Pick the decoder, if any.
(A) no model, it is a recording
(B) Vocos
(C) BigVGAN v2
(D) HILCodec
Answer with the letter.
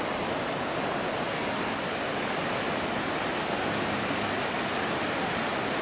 A